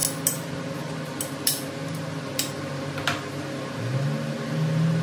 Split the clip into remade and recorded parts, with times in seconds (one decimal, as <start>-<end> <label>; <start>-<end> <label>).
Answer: 0.0-5.0 recorded